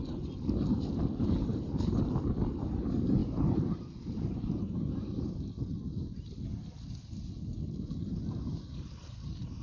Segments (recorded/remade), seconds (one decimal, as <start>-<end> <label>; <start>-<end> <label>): 0.0-1.5 recorded; 1.5-2.1 remade; 2.1-3.2 recorded; 3.2-5.4 remade; 5.4-9.6 recorded